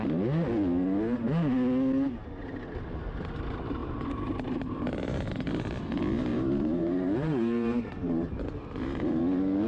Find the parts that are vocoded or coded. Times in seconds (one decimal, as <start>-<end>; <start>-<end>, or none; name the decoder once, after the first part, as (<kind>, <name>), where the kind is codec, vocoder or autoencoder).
3.8-5.3 (vocoder, BigVGAN v2); 6.3-9.2